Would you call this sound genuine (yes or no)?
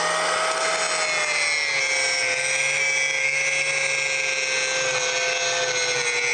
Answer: yes